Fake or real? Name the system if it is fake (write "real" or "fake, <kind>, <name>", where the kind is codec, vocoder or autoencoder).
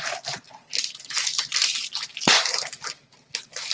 real